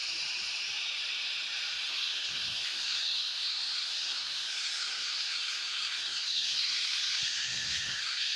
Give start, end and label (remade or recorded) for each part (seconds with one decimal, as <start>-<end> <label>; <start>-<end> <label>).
0.0-1.9 recorded; 1.9-8.4 remade